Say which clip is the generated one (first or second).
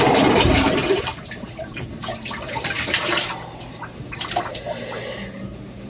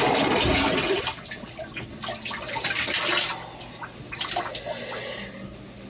first